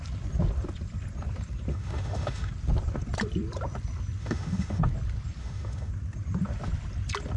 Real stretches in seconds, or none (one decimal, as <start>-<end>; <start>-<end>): 0.0-1.7; 2.5-4.2; 4.8-5.4; 5.9-7.4